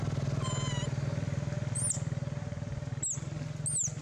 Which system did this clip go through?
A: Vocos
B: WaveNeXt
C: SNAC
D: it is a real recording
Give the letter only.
D